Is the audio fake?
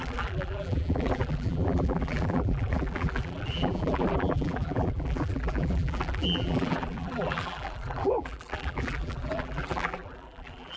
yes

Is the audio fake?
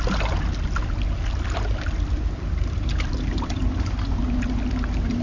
no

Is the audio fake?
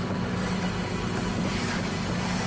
no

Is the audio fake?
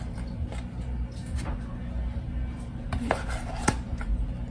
yes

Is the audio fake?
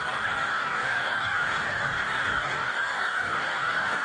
yes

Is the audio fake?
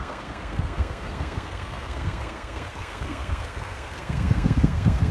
yes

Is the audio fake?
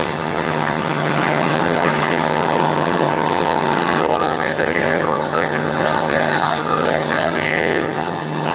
yes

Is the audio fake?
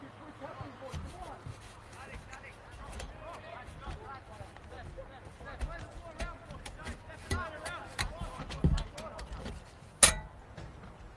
no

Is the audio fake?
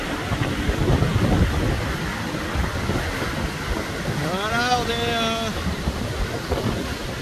no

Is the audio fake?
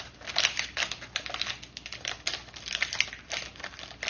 yes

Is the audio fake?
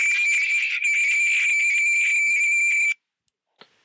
no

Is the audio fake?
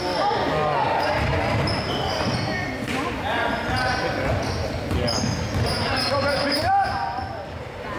no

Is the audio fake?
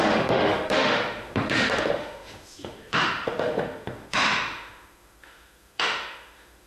yes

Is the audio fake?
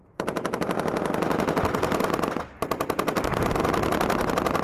no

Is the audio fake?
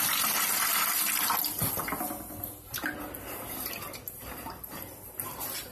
no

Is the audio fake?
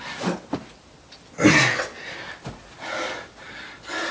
no